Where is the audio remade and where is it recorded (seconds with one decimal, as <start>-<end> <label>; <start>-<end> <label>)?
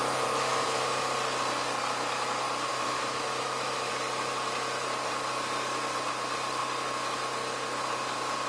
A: 0.0-1.0 remade; 1.0-2.7 recorded; 2.7-3.9 remade; 3.9-8.5 recorded